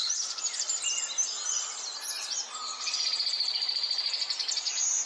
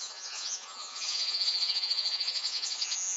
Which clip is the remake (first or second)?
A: second